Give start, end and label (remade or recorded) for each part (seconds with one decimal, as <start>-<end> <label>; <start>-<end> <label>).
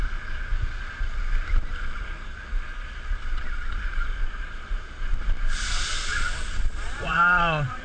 0.0-2.7 recorded; 2.7-3.7 remade; 3.7-6.1 recorded; 6.1-7.8 remade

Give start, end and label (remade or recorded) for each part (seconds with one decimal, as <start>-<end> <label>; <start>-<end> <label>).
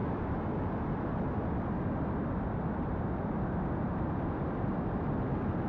0.0-5.7 recorded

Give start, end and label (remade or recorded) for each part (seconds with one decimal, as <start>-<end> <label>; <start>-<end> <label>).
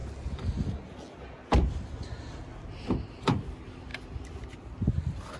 0.0-5.4 recorded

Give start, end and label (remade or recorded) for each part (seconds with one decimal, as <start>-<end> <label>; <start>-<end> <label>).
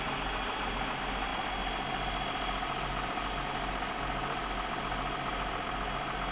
0.0-6.3 recorded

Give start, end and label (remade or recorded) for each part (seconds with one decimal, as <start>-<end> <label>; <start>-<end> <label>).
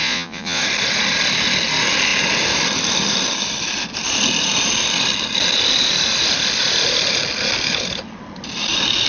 0.0-0.6 remade; 0.6-9.1 recorded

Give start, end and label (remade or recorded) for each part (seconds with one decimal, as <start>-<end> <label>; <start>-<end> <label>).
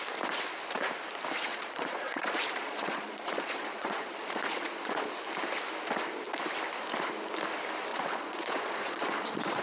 0.0-1.5 recorded; 1.5-5.1 remade; 5.1-7.9 recorded; 7.9-9.6 remade